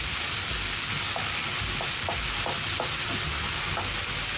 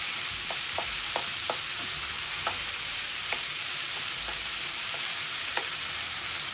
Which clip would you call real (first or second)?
first